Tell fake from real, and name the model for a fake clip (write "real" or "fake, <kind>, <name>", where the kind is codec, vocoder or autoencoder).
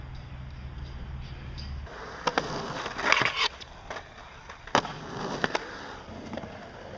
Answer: real